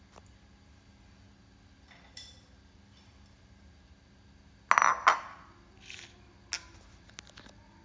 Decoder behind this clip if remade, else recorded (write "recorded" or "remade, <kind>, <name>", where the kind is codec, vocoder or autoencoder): recorded